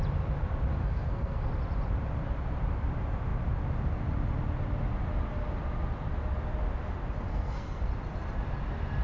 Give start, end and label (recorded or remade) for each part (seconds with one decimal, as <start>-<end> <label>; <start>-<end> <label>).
0.0-0.8 recorded; 0.8-1.5 remade; 1.5-7.3 recorded; 7.3-7.9 remade; 7.9-9.0 recorded